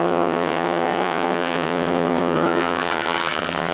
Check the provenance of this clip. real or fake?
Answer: fake